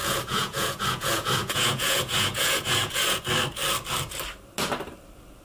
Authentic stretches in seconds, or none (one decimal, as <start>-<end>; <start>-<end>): 3.2-5.4